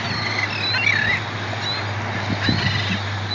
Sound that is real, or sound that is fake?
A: real